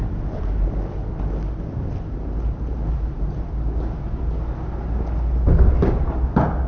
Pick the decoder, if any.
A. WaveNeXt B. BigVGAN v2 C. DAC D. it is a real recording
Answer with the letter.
D